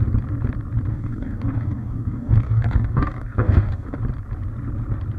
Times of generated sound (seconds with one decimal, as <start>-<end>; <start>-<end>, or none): 0.9-4.0